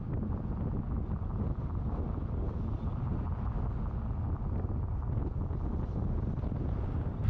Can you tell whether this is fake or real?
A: real